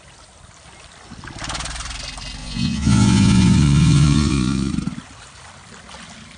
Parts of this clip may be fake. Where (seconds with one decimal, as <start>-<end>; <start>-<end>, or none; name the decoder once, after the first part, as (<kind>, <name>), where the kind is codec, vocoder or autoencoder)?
2.4-4.7 (vocoder, Vocos)